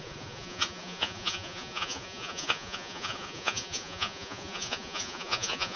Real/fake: fake